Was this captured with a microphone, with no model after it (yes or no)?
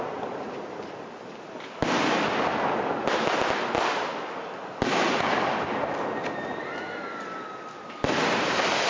yes